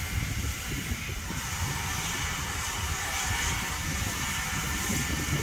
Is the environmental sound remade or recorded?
recorded